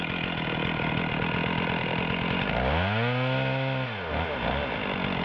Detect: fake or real real